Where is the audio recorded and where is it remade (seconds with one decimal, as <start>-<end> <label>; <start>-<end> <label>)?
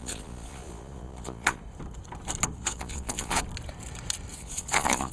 0.0-1.6 remade; 1.6-2.6 recorded; 2.6-3.4 remade; 3.4-4.3 recorded; 4.3-5.1 remade